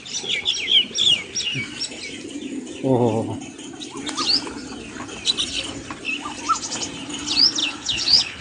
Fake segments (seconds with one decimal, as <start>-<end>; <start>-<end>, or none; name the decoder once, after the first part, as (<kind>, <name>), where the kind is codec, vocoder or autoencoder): 7.6-8.4 (codec, HILCodec)